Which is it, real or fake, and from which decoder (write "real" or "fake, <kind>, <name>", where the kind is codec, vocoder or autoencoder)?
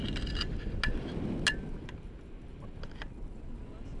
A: real